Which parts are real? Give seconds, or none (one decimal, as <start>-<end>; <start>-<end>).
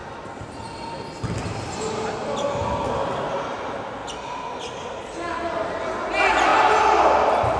0.0-7.6